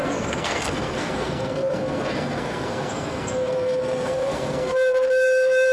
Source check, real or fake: fake